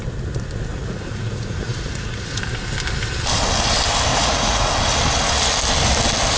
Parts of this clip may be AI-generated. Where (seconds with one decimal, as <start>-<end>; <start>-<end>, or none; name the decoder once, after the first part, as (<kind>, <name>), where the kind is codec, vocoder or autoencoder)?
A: 0.7-2.4 (vocoder, Vocos); 4.1-4.7